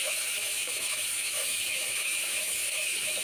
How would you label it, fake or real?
fake